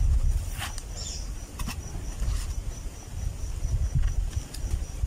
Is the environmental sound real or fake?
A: fake